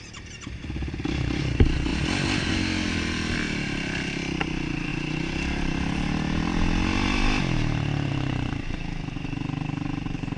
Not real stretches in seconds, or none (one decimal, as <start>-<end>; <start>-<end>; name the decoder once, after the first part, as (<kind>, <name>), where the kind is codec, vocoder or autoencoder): none